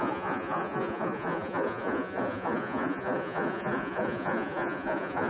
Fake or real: fake